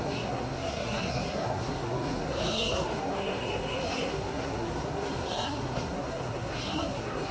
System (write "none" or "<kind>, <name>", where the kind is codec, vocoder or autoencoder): codec, SNAC